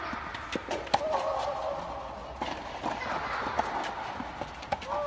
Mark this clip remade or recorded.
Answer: recorded